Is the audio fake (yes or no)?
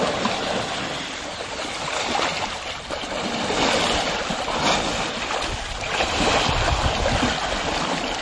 no